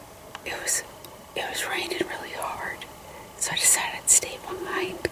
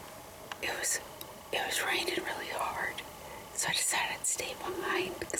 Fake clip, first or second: first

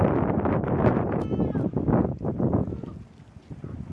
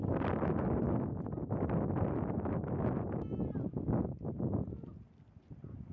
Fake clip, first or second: first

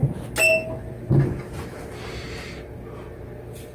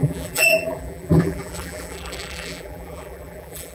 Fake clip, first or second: second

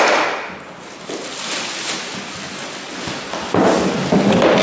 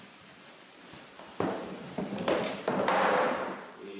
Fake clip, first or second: second